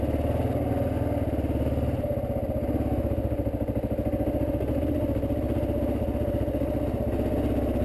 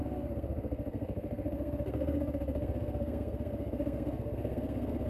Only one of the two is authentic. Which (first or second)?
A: first